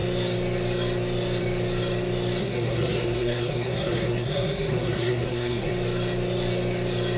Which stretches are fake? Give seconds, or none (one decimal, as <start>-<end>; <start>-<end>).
2.4-5.7